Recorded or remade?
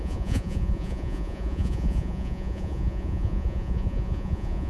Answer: remade